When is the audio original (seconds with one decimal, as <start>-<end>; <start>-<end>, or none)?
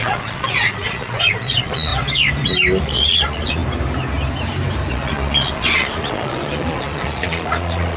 1.9-2.8; 3.6-4.9